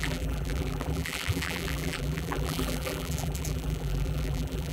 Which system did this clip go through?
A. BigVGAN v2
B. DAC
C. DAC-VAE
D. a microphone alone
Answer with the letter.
A